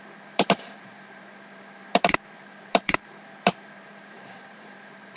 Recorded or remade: remade